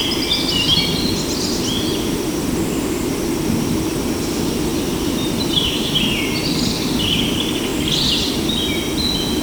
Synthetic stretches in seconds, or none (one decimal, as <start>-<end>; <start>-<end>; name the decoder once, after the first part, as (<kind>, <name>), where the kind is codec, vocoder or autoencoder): 4.7-5.9 (vocoder, BigVGAN v2)